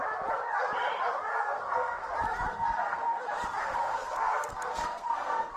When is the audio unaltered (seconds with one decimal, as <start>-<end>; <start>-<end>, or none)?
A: 0.0-1.3; 2.1-2.5; 3.2-3.6